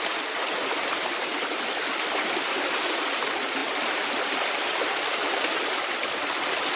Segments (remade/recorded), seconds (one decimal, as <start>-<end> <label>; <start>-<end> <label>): 0.0-6.8 recorded